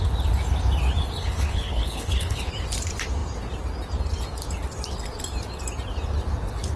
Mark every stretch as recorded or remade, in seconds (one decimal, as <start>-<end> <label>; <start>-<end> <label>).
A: 0.0-1.2 recorded; 1.2-2.5 remade; 2.5-6.8 recorded